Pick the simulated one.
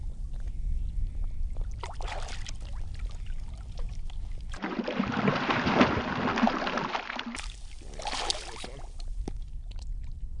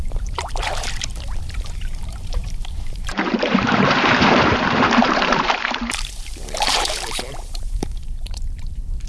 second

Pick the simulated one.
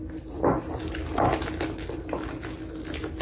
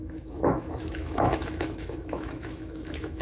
second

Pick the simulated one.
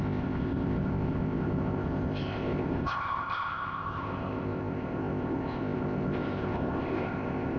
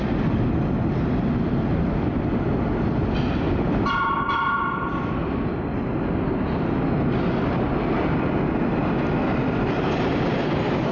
first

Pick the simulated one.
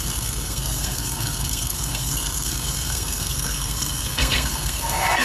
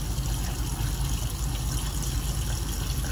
first